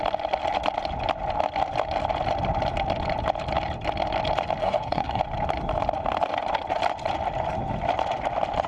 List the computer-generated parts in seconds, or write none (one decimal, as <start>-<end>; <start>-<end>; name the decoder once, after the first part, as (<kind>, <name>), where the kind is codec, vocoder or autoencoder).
4.6-5.2 (codec, SNAC)